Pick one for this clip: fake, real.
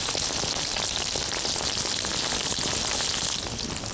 real